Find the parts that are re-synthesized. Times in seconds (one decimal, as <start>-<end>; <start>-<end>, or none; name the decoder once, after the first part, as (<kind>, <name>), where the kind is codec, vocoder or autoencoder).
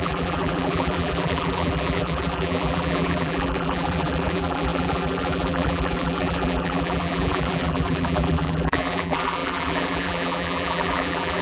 0.0-11.4 (vocoder, BigVGAN v2)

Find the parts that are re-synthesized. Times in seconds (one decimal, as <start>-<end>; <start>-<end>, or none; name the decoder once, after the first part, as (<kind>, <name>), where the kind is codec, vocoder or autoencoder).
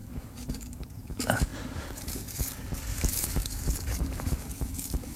0.0-5.2 (codec, DAC)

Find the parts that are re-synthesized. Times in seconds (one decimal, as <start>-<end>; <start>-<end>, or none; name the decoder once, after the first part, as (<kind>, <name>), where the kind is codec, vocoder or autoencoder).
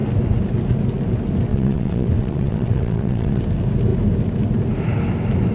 1.5-3.4 (vocoder, WaveNeXt)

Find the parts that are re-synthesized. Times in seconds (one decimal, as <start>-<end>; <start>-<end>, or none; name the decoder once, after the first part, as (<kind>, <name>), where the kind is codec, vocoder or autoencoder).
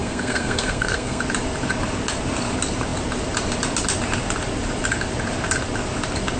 0.0-1.2 (codec, SNAC)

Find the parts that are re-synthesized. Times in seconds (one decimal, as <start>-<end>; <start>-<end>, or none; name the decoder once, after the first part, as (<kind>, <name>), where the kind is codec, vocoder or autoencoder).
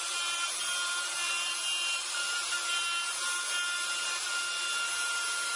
none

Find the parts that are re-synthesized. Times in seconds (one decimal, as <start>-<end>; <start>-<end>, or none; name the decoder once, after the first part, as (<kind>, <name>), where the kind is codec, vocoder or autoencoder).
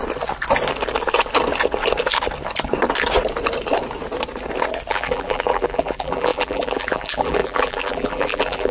4.9-8.7 (vocoder, BigVGAN v2)